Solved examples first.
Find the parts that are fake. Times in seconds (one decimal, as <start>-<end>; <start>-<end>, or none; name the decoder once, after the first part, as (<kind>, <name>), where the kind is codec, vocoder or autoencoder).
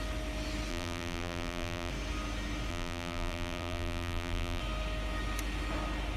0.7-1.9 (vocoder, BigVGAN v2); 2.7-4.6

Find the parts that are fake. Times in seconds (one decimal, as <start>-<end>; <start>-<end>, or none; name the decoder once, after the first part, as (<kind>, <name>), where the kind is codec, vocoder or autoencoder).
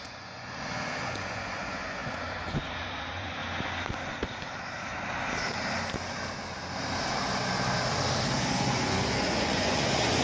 0.0-3.4 (vocoder, Vocos); 8.4-10.2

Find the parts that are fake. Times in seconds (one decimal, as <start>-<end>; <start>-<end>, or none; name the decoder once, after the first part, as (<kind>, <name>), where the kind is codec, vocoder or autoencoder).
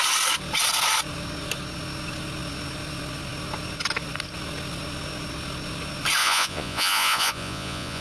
6.2-8.0 (vocoder, Vocos)